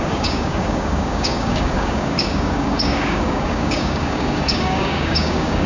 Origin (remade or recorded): remade